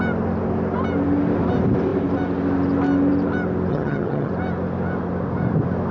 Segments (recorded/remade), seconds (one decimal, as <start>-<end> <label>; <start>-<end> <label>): 0.0-3.7 recorded; 3.7-4.3 remade; 4.3-5.9 recorded